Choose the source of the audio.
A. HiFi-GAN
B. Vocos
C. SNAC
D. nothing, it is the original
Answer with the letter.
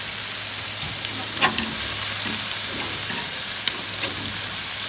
D